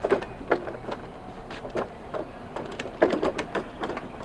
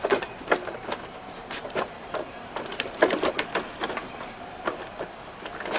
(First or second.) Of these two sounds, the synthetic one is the second